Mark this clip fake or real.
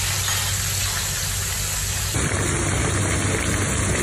real